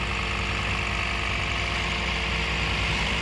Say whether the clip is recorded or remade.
recorded